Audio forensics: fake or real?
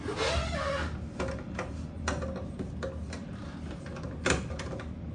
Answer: real